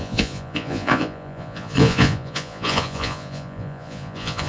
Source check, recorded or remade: remade